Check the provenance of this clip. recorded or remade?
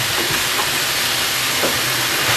recorded